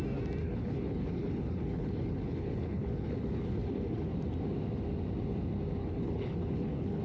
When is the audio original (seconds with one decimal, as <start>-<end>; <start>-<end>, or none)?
0.0-0.4; 4.1-5.8